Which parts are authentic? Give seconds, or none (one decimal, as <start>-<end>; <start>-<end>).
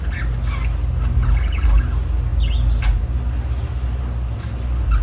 0.0-5.0